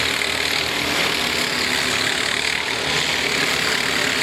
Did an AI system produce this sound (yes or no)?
no